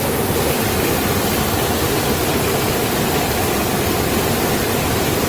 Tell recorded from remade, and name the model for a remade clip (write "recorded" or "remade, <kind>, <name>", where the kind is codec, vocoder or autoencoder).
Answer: recorded